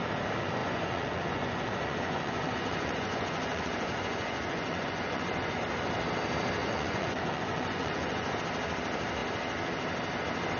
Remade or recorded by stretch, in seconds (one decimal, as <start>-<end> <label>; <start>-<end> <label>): 0.0-0.6 recorded; 0.6-5.6 remade; 5.6-6.6 recorded; 6.6-8.3 remade; 8.3-10.6 recorded

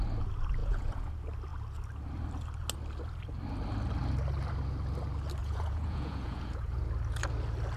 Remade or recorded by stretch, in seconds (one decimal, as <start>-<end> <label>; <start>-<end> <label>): 0.0-0.6 recorded; 0.6-1.1 remade; 1.1-5.4 recorded; 5.4-6.8 remade; 6.8-7.8 recorded

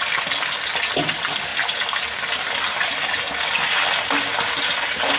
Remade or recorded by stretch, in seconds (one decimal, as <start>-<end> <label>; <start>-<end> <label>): 0.0-5.2 recorded

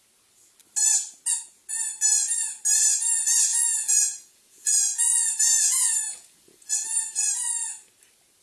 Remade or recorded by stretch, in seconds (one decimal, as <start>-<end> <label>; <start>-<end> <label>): 0.0-3.5 recorded; 3.5-7.3 remade; 7.3-8.4 recorded

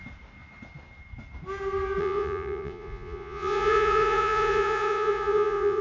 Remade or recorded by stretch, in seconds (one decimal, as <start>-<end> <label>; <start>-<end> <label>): 0.0-2.0 recorded; 2.0-5.8 remade

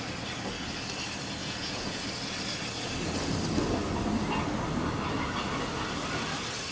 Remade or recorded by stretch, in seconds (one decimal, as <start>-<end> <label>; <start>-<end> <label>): 0.0-1.4 recorded; 1.4-2.0 remade; 2.0-6.7 recorded

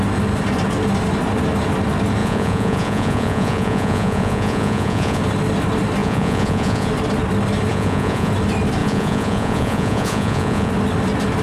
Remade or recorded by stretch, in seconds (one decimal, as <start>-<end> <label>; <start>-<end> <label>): 0.0-2.2 recorded; 2.2-5.2 remade; 5.2-6.0 recorded; 6.0-6.9 remade; 6.9-7.7 recorded; 7.7-8.3 remade; 8.3-8.8 recorded; 8.8-10.7 remade; 10.7-11.4 recorded